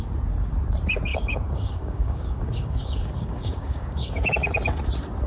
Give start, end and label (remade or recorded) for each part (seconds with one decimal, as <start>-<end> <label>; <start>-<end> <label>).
0.0-1.1 recorded; 1.1-4.3 remade; 4.3-5.3 recorded